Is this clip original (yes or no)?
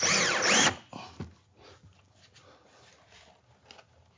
yes